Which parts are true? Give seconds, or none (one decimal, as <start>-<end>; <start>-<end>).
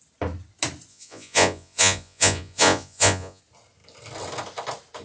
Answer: 0.0-0.9; 3.4-5.0